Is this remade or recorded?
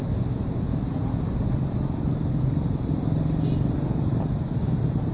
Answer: recorded